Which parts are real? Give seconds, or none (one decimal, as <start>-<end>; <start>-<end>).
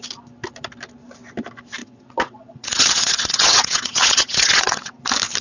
0.0-1.8; 5.0-5.4